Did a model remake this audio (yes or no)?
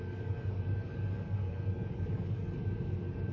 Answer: yes